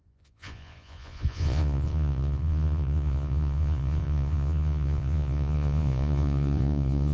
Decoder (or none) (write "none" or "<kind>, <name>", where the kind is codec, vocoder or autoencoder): vocoder, Vocos